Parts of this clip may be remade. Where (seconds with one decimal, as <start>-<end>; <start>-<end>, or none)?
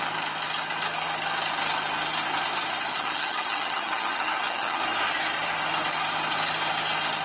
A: 2.9-4.8